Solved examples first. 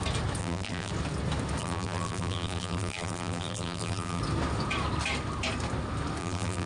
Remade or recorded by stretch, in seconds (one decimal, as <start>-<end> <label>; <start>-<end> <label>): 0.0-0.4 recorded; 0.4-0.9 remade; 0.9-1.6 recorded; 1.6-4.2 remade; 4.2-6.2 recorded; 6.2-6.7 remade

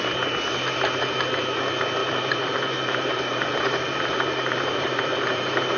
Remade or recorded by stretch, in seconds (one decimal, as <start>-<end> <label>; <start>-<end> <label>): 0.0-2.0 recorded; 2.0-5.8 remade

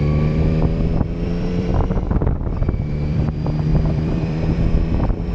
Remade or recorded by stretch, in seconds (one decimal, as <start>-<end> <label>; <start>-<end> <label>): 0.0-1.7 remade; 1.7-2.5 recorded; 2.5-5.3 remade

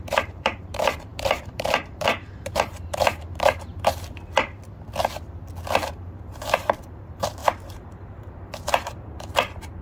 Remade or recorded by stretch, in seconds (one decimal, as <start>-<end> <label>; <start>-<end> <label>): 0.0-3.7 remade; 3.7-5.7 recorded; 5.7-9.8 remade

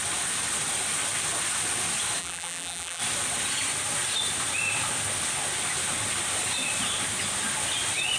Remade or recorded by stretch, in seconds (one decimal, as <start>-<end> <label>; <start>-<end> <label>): 0.0-2.2 recorded; 2.2-3.0 remade; 3.0-8.2 recorded